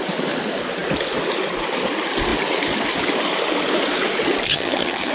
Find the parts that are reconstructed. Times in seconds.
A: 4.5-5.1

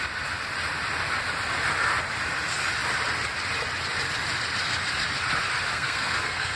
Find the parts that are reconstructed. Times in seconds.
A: 5.7-6.6

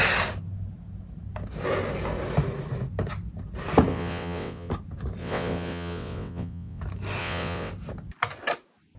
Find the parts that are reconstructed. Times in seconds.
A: 3.9-4.7; 5.2-6.8; 7.2-7.7

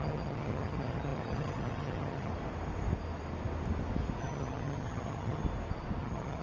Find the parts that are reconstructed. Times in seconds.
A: 0.0-2.3; 4.2-5.4; 6.0-6.4

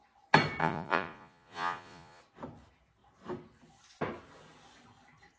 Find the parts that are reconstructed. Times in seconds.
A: 0.6-2.2

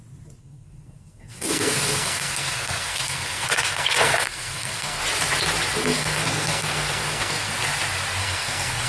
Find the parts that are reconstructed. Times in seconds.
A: 0.4-5.0; 5.8-7.5; 8.2-8.9

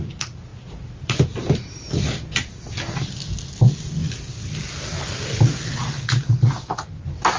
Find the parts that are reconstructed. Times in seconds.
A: none

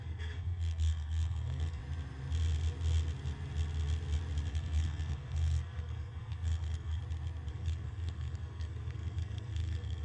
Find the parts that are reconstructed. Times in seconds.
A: 0.0-1.8; 4.5-7.0; 7.5-10.0